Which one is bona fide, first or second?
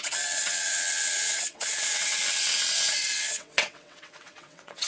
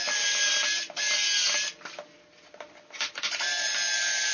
second